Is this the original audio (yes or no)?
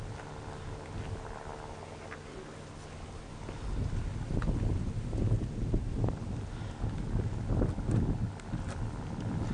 yes